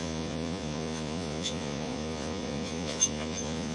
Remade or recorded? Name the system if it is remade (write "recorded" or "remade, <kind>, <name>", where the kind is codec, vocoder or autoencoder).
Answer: remade, vocoder, Vocos